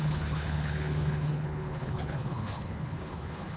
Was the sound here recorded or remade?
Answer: remade